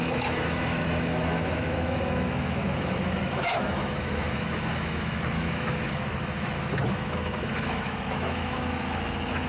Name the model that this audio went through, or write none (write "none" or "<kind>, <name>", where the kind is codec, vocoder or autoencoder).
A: autoencoder, DAC-VAE